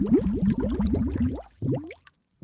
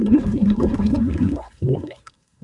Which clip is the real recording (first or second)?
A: first